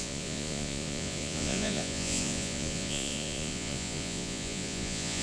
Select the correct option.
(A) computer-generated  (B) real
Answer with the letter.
A